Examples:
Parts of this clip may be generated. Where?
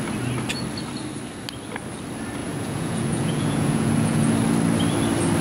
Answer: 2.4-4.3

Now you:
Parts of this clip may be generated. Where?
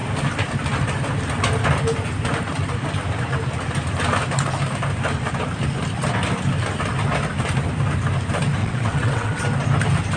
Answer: 8.6-9.4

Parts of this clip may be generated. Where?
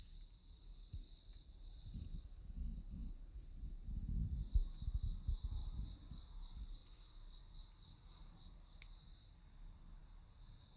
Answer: none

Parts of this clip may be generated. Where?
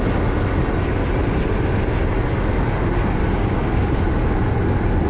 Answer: 3.2-3.9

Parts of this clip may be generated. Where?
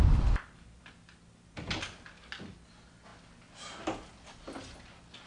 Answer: none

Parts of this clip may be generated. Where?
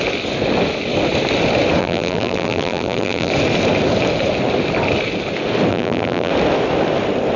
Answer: 1.8-3.3; 5.7-6.3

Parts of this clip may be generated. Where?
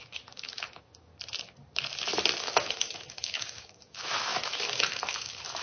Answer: 0.0-1.1; 2.4-5.6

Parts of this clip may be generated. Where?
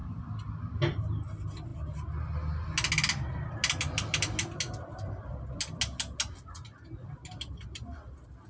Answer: none